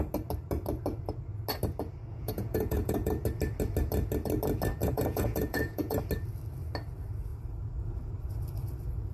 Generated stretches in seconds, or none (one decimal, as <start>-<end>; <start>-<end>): 2.1-3.1; 4.8-6.0